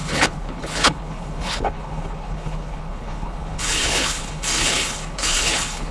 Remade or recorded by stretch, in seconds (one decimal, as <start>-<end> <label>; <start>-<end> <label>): 0.0-5.9 remade